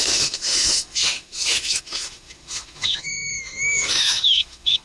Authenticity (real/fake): fake